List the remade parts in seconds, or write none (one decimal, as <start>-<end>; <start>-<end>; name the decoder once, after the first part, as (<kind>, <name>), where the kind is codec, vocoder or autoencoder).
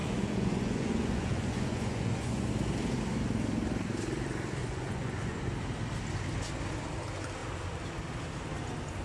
0.0-2.5 (vocoder, Vocos); 4.6-5.4